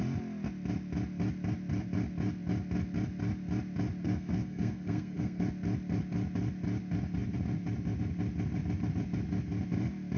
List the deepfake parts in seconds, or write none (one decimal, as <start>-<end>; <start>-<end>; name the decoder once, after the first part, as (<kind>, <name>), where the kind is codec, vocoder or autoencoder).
4.0-5.4 (codec, SNAC)